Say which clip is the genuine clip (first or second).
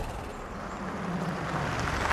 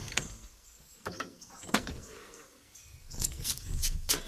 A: first